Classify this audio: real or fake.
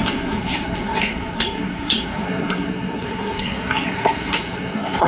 fake